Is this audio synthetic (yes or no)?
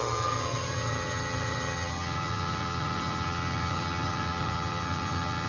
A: yes